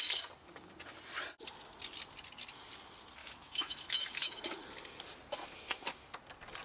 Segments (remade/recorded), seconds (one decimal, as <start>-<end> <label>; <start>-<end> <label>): 0.0-3.2 recorded; 3.2-4.4 remade; 4.4-6.6 recorded